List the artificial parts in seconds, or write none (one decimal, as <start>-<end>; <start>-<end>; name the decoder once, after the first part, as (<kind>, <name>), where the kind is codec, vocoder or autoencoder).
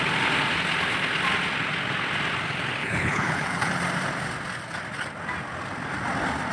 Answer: 2.8-3.7 (codec, HILCodec)